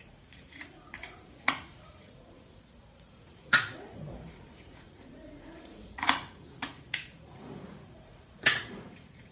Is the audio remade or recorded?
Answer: remade